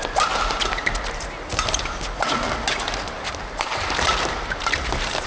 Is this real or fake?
real